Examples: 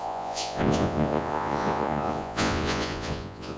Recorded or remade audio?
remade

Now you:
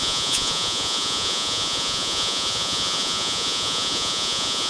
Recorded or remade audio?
remade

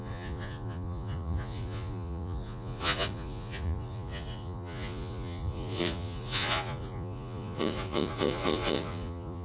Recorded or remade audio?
remade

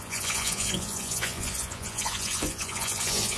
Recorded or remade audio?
remade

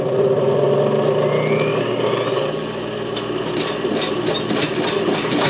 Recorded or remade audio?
recorded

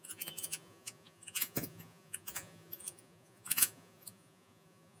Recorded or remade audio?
remade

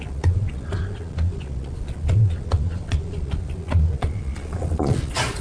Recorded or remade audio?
remade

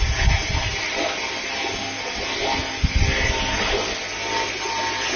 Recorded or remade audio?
recorded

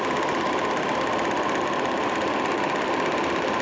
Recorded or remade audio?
recorded